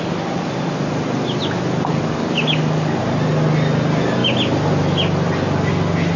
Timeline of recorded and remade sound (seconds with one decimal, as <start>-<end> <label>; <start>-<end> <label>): 0.0-1.9 recorded; 1.9-3.0 remade; 3.0-6.2 recorded